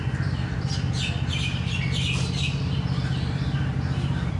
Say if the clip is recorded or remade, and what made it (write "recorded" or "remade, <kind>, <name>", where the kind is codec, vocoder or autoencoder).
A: recorded